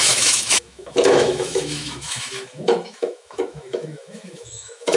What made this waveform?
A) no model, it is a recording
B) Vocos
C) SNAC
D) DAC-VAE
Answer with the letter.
D